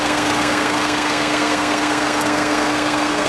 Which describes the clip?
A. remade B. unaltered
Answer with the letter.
A